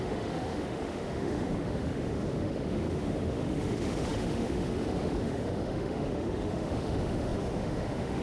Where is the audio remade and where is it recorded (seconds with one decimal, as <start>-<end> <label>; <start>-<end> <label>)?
0.0-8.2 remade